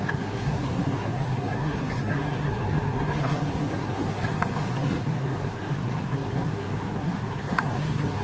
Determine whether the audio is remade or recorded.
remade